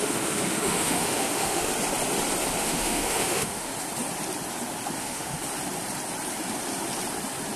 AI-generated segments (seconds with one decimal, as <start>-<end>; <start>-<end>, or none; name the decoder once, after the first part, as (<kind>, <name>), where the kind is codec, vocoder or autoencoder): 0.0-1.7 (autoencoder, DAC-VAE); 2.6-3.7; 5.0-5.4